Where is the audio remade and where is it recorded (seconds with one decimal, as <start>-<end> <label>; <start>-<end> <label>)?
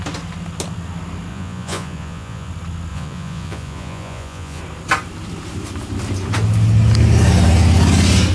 0.0-1.3 recorded; 1.3-2.5 remade; 2.5-2.9 recorded; 2.9-4.6 remade; 4.6-8.3 recorded